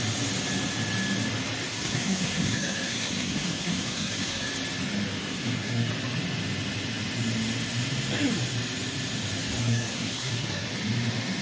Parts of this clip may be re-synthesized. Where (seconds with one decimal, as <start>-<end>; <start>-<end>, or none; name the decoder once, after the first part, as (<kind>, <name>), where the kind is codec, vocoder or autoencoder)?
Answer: 1.7-4.5 (codec, SNAC); 5.2-5.9; 9.6-10.7